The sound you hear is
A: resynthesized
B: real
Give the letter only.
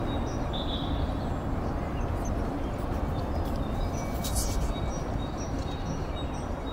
B